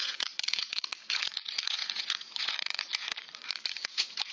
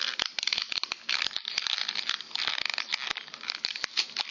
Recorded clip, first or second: second